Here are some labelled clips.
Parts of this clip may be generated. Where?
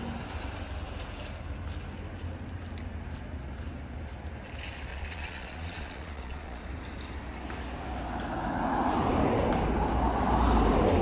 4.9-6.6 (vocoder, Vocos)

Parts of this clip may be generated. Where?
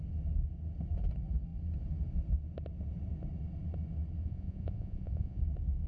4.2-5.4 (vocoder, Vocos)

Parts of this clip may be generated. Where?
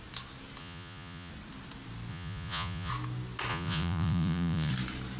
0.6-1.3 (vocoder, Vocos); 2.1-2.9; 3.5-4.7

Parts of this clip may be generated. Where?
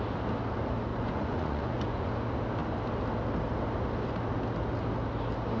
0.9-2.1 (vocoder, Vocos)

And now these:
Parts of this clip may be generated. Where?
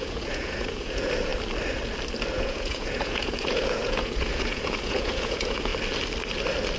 0.0-1.3 (vocoder, Vocos); 2.3-5.7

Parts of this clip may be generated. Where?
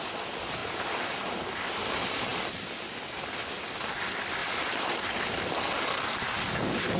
none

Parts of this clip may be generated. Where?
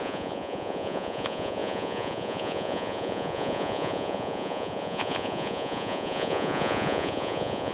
0.0-7.7 (vocoder, Vocos)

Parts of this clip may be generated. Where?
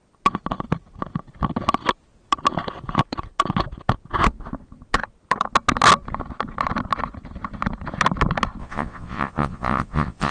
8.6-10.3 (vocoder, Vocos)